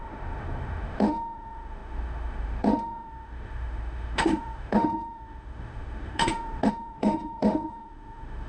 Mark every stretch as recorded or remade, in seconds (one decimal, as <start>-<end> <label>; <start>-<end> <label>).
0.0-8.5 remade